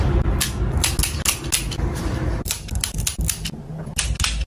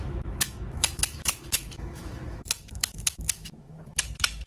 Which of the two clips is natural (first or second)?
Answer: first